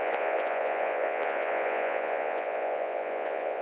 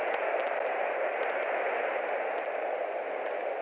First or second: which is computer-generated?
first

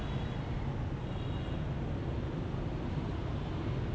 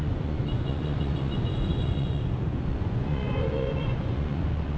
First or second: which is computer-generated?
second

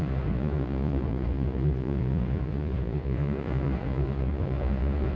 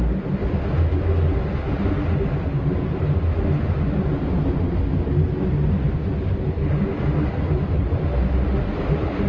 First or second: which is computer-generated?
first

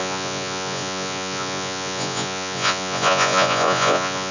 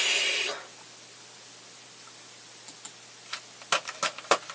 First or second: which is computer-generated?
first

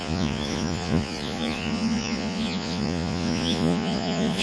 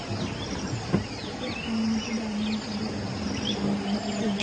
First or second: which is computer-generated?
first